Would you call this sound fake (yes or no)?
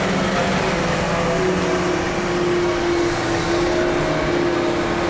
no